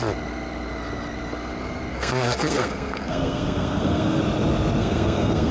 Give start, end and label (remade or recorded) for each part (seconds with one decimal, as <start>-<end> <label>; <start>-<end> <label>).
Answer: 0.0-1.9 recorded; 1.9-4.2 remade; 4.2-4.8 recorded; 4.8-5.5 remade